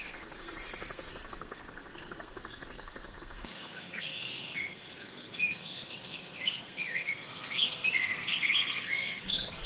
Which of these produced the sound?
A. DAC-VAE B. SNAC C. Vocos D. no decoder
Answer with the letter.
B